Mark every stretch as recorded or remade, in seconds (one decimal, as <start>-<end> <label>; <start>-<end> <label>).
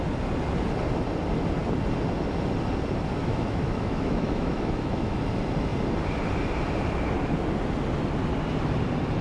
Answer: 0.0-3.2 recorded; 3.2-5.2 remade; 5.2-9.2 recorded